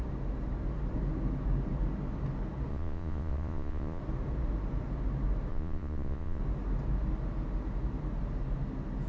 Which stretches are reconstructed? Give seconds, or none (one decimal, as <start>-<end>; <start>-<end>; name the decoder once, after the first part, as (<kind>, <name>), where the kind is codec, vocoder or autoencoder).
2.7-4.0 (vocoder, Vocos); 5.5-6.4